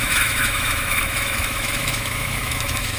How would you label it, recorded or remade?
remade